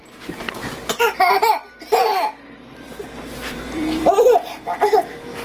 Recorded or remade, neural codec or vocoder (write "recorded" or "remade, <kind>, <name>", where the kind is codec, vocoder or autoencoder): remade, vocoder, BigVGAN v2